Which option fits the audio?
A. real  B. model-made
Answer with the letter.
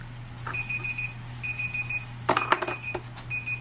A